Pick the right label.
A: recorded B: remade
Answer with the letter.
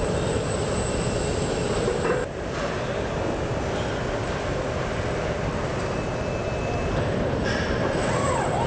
B